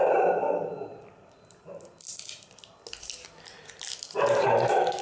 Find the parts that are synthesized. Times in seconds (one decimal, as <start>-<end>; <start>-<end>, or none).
none